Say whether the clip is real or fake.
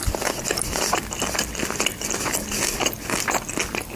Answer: real